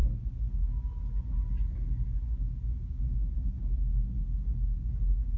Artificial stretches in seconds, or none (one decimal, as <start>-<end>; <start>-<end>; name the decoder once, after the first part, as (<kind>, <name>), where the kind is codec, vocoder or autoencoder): none